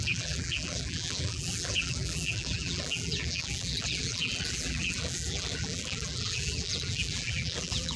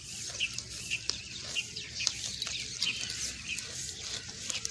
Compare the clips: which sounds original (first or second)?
second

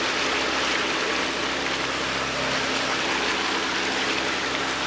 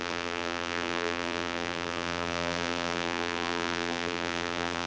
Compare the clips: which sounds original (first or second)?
first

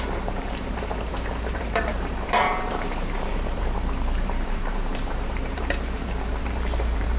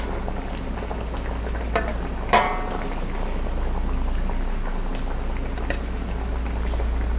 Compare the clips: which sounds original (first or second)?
second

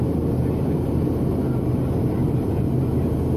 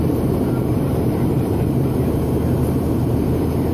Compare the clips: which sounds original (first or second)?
first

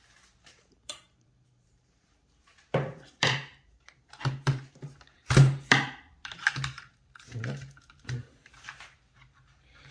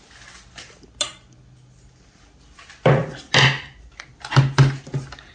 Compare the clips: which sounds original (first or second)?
second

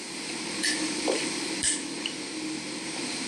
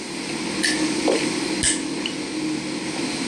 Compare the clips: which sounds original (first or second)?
second